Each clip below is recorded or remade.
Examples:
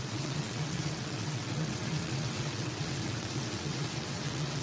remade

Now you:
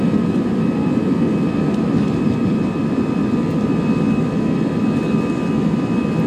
recorded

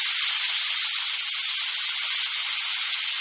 recorded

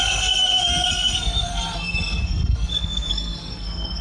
remade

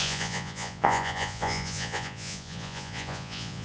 remade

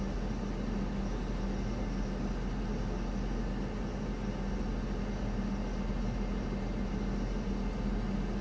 recorded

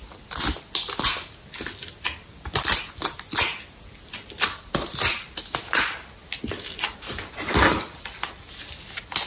recorded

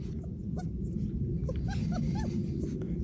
recorded